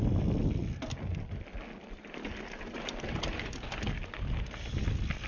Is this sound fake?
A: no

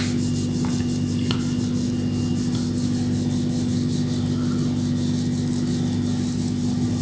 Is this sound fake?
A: no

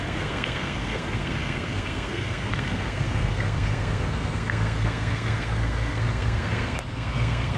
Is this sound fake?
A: yes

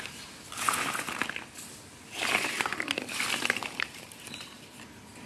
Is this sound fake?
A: no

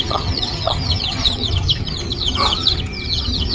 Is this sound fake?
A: yes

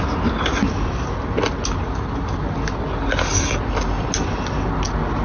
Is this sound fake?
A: no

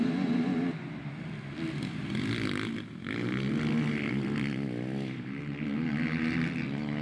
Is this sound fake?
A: no